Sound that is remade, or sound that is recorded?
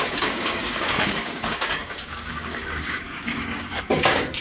remade